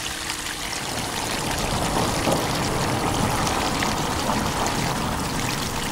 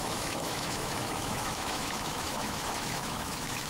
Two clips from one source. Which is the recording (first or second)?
first